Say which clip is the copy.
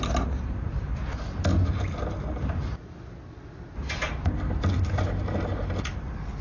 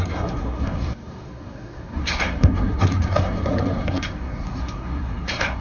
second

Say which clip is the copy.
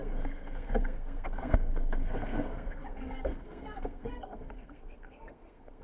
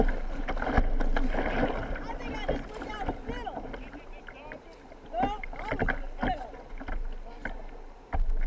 first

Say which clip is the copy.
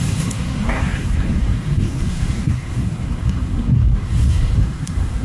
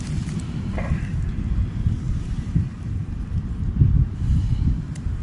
first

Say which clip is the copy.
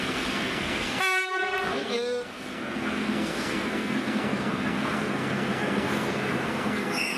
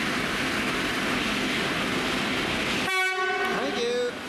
first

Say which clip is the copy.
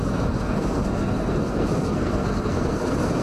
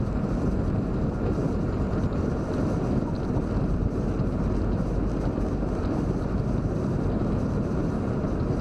first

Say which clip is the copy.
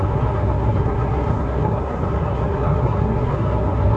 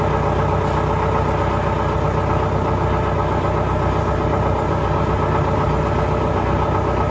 first